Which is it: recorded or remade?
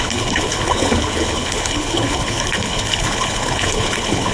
remade